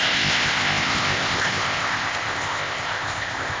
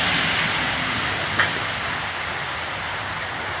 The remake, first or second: first